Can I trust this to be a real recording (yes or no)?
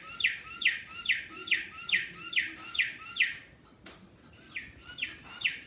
yes